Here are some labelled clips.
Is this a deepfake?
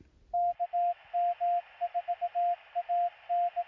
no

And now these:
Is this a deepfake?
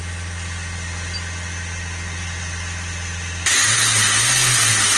no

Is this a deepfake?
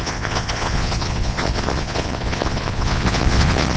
yes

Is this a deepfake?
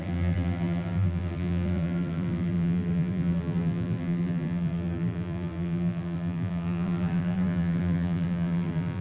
yes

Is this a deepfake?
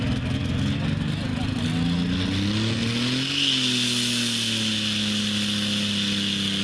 no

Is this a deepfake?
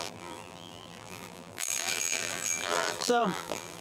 yes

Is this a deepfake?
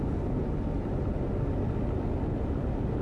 no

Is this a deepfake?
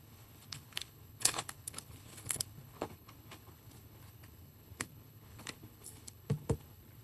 yes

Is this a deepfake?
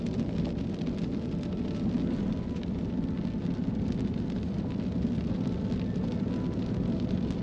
no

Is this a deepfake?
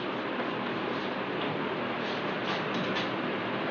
no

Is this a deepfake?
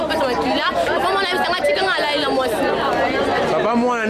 no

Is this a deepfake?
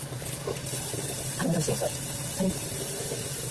no